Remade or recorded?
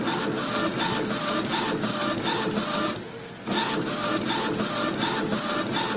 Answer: recorded